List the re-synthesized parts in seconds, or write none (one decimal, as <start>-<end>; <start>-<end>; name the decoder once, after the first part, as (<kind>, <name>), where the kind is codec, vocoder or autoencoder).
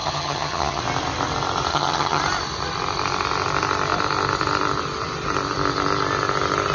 0.0-0.8 (vocoder, HiFi-GAN); 1.7-2.2